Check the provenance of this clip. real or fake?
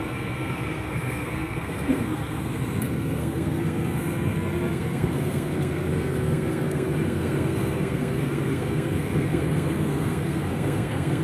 fake